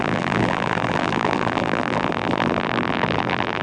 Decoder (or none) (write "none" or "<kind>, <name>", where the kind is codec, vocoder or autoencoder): vocoder, BigVGAN v2